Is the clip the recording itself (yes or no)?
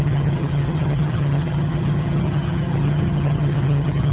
no